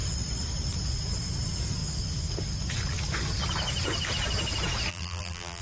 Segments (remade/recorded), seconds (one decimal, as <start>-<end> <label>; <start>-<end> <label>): 0.0-4.9 recorded; 4.9-5.6 remade